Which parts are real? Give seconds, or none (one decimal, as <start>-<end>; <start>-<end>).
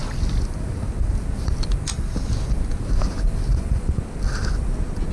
0.0-3.5; 4.0-5.1